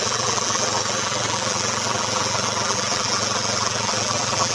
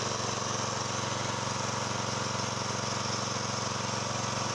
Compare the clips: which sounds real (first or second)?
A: second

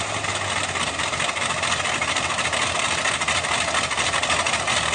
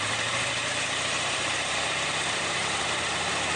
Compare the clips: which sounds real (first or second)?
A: first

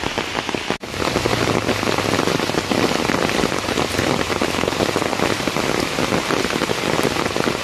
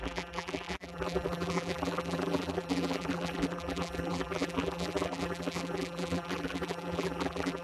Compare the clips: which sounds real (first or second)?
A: first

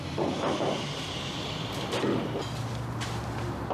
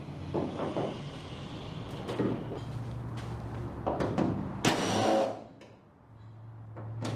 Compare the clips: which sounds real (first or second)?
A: second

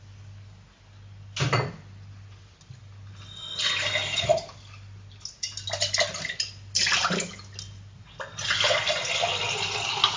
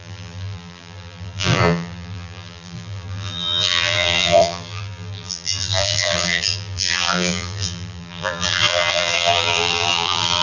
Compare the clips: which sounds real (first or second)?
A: first